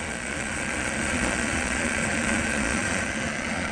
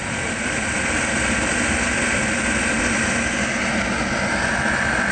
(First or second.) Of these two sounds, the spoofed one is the first